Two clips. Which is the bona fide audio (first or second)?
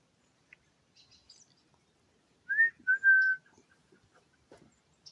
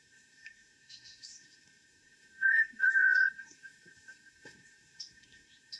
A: first